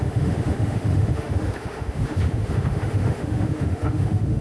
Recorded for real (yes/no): no